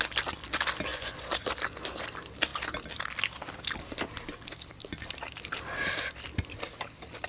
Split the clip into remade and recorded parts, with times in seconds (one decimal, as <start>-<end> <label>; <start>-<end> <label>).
0.0-0.9 recorded; 0.9-1.5 remade; 1.5-7.3 recorded